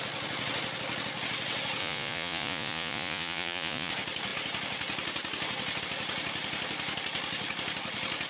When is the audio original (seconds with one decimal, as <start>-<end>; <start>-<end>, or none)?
0.0-1.8; 3.9-8.3